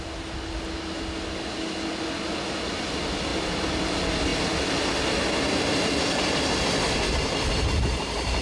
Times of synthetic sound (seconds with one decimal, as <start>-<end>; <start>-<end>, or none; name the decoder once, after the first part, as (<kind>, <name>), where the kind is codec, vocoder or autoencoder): 3.3-3.9 (vocoder, BigVGAN v2)